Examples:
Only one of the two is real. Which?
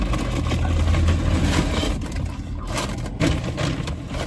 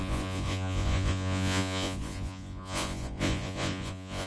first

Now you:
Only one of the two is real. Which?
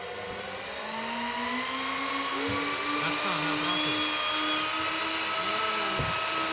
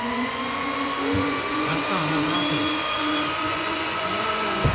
first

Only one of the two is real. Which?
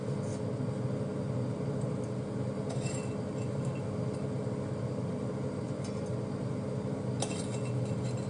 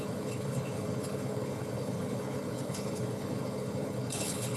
first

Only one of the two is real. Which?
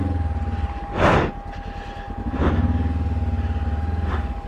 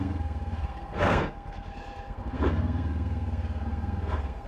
first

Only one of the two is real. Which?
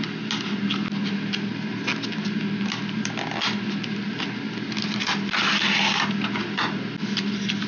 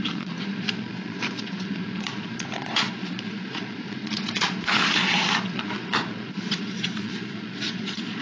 first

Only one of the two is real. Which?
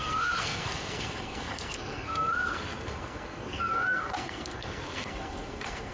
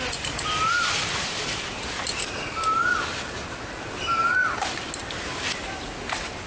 second